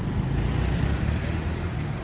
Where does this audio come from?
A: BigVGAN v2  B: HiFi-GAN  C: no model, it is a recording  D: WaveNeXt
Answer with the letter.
C